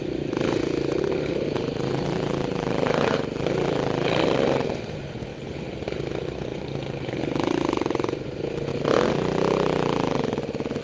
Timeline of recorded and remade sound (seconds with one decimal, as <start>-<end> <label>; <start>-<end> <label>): 0.0-6.5 recorded; 6.5-7.2 remade; 7.2-10.8 recorded